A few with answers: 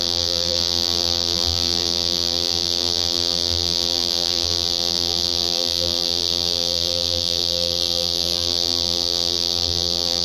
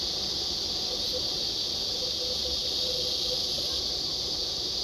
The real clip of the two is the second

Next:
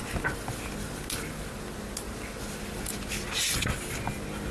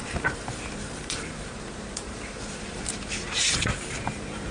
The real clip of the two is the first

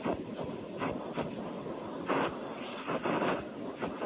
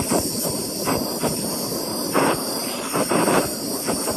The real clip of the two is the first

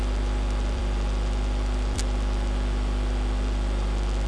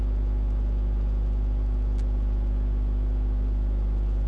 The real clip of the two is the second